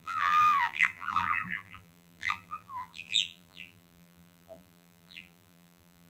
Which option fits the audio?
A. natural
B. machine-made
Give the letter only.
B